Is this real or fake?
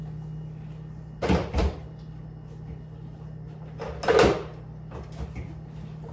real